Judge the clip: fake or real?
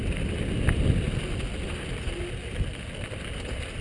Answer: real